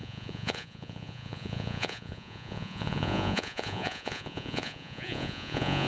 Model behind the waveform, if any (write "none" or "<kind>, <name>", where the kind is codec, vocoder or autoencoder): vocoder, Vocos